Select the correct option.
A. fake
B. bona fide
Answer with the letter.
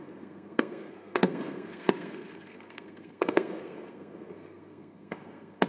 A